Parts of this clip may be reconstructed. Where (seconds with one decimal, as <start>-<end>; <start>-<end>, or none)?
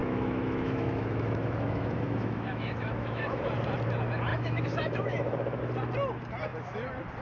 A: 0.0-3.5; 4.3-5.6